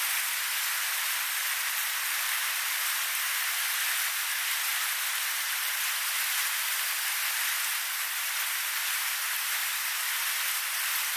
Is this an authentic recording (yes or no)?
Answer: no